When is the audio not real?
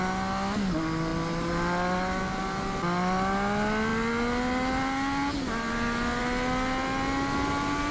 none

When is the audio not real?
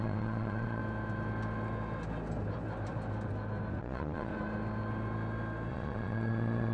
0.0-0.8 (vocoder, Vocos); 3.8-4.3; 5.7-6.7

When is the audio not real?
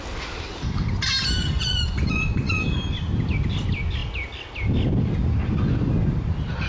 1.4-2.6 (vocoder, Vocos)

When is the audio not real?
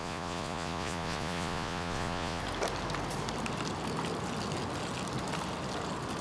0.0-2.4 (vocoder, Vocos)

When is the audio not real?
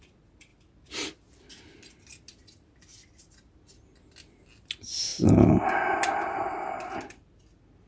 none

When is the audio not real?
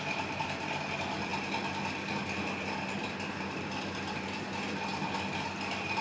none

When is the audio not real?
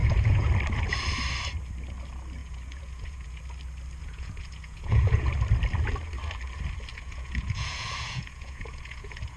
0.0-0.5 (vocoder, Vocos); 2.4-3.4; 4.0-5.3; 6.9-9.4